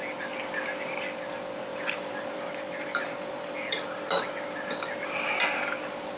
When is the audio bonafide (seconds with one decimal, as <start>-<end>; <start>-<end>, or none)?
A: 0.0-1.7; 4.2-6.2